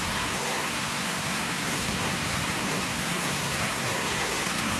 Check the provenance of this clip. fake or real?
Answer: fake